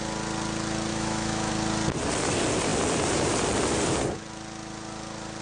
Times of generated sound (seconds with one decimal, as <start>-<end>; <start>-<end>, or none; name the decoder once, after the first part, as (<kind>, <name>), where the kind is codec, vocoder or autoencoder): 0.9-1.5 (autoencoder, DAC-VAE)